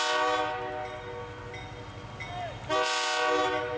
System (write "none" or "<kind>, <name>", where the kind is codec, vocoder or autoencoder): none